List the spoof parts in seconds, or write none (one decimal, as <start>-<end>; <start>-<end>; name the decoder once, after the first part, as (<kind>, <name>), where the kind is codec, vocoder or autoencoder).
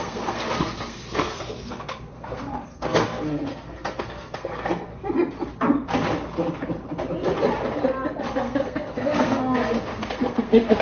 0.0-4.9 (codec, SNAC); 8.2-10.8